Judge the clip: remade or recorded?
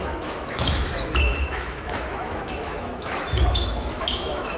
remade